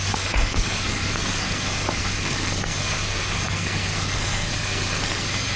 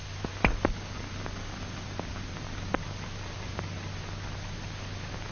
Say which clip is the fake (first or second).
first